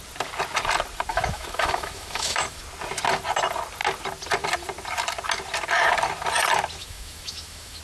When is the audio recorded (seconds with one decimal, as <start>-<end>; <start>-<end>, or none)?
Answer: 0.0-1.1; 2.6-6.8